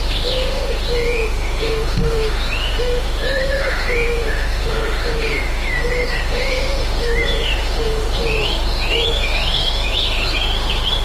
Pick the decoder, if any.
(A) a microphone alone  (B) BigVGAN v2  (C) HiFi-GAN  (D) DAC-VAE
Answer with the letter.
D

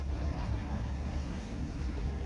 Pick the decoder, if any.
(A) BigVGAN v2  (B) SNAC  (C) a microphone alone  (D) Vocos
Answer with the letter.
B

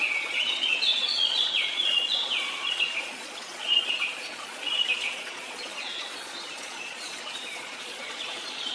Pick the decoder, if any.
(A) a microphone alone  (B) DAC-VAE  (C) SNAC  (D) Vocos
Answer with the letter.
D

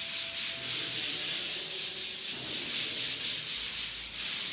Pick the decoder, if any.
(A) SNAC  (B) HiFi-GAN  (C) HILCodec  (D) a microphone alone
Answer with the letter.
D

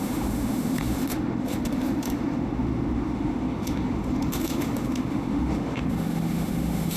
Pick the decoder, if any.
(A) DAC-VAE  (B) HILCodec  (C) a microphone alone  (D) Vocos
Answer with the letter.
A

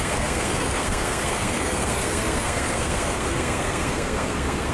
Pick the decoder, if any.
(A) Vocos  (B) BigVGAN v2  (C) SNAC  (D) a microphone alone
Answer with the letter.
C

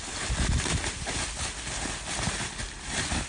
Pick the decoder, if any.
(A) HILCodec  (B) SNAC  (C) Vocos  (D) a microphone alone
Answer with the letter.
D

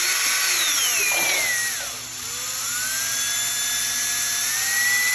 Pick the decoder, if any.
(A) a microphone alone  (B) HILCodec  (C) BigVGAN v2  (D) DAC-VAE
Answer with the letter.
A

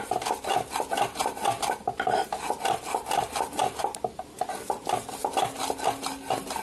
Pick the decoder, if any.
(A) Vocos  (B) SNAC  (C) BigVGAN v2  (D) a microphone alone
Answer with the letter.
D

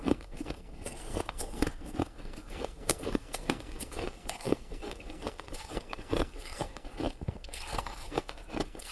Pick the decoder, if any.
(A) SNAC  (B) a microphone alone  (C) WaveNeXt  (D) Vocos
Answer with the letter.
A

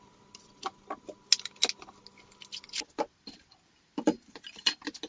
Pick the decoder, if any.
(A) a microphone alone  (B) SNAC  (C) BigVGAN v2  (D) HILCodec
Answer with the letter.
A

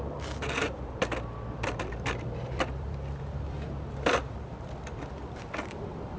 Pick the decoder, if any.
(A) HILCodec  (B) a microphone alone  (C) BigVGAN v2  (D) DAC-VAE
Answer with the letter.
C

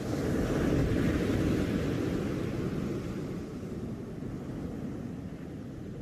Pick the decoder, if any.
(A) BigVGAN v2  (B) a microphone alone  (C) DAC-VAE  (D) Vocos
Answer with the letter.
B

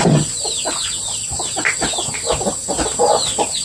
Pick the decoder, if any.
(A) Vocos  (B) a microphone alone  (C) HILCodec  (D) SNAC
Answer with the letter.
B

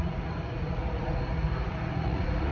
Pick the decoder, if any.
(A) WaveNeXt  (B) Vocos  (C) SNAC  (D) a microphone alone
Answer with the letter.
B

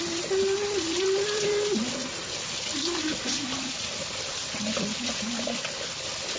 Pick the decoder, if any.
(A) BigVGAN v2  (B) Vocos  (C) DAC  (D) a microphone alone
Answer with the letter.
D